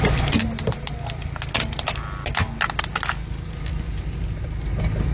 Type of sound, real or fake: real